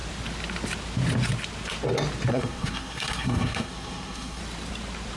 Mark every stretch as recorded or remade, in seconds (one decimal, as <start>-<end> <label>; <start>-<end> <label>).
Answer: 0.0-2.3 recorded; 2.3-4.4 remade; 4.4-5.2 recorded